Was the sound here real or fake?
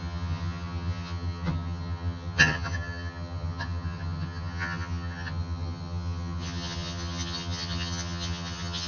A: fake